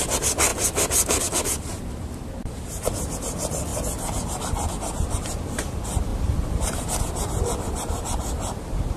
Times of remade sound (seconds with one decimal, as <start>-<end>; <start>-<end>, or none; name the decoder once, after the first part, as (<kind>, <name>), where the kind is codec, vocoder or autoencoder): none

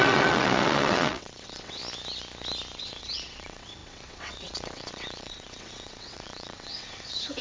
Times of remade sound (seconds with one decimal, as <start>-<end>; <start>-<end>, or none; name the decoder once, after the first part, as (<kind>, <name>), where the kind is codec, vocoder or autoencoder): 0.0-1.8 (vocoder, WaveNeXt); 2.8-7.4